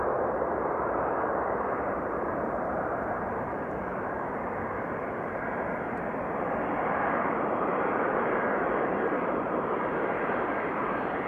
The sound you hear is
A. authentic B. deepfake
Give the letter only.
B